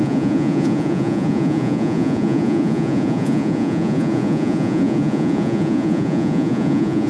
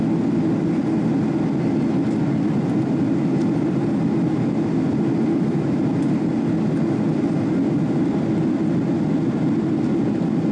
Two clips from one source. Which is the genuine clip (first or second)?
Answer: second